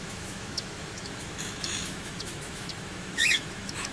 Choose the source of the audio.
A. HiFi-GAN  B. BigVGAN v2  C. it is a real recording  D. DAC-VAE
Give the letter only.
D